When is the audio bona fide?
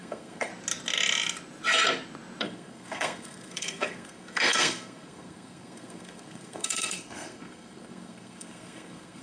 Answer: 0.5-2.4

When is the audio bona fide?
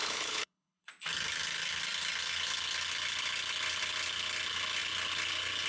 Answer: 0.9-5.7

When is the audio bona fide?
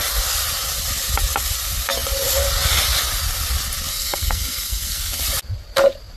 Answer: 0.0-3.9; 5.2-6.2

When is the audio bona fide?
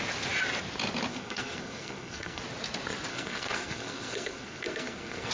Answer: 0.0-1.1; 2.4-3.1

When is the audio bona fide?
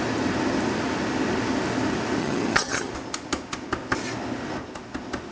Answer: 0.0-2.2; 2.9-5.3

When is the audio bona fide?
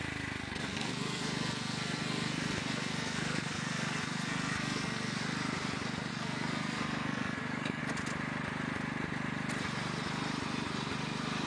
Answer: 0.0-0.4; 5.2-6.1; 7.8-11.5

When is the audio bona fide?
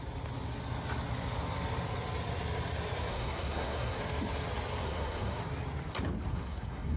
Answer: 0.0-3.1; 4.0-4.8; 5.4-6.3